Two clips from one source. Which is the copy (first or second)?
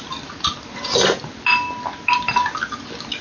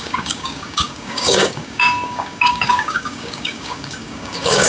second